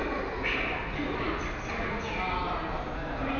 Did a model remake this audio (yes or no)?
no